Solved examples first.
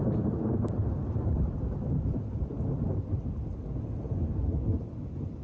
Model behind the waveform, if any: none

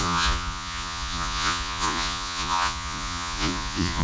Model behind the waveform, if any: vocoder, Vocos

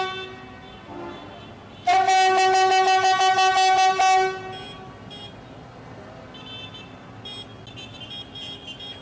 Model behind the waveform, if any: none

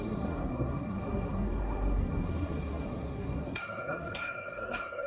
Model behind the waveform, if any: codec, SNAC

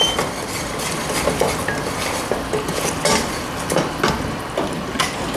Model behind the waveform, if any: none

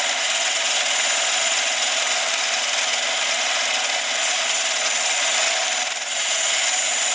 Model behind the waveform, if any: none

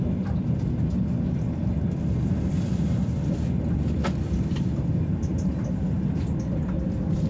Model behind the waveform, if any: none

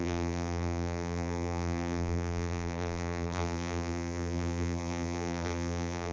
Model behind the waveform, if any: vocoder, BigVGAN v2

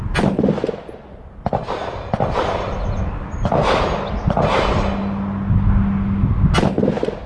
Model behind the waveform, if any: none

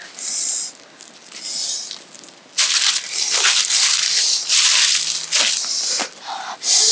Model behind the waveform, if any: none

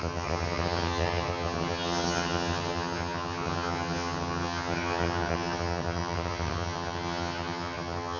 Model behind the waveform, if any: vocoder, HiFi-GAN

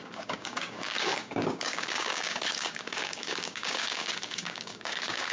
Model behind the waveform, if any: codec, DAC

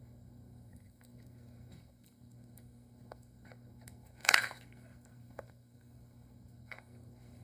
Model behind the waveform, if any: codec, SNAC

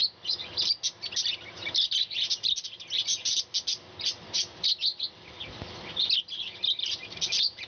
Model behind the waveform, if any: none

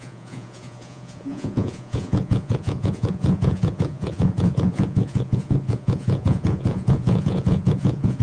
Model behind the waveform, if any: vocoder, Vocos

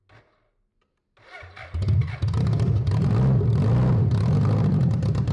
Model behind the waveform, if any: none